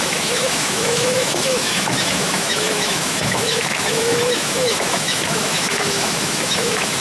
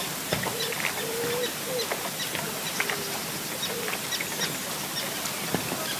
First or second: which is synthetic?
first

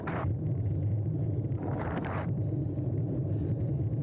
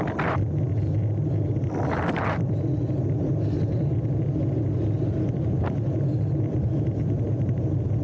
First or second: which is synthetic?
first